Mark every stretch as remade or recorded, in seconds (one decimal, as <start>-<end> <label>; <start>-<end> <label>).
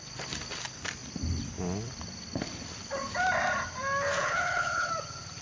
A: 0.0-4.2 recorded; 4.2-4.9 remade; 4.9-5.4 recorded